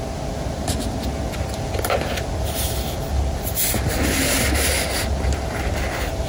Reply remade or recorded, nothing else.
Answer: recorded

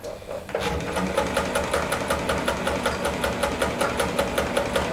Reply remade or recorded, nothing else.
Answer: recorded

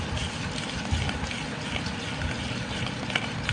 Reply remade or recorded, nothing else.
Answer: recorded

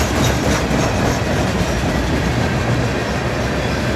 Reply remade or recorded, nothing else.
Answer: recorded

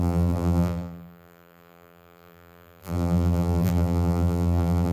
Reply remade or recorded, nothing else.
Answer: remade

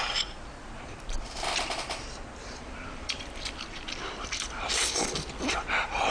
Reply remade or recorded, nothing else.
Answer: remade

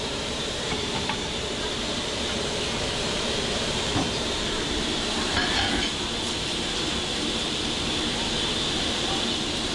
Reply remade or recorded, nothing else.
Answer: remade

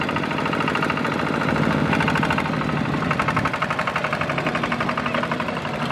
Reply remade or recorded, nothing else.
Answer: recorded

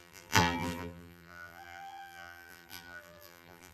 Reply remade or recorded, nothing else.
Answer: remade